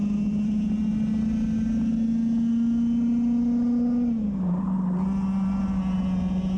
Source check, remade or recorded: recorded